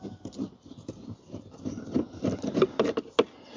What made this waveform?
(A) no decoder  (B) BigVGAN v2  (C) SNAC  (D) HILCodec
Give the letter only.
A